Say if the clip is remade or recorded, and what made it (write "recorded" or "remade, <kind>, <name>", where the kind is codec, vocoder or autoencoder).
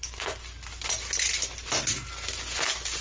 recorded